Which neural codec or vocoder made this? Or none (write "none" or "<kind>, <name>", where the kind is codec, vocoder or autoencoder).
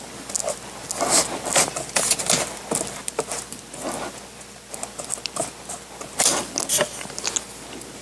none